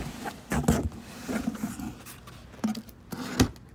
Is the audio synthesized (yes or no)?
no